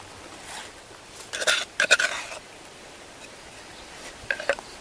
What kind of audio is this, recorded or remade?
recorded